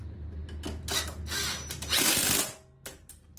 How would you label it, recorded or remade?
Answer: recorded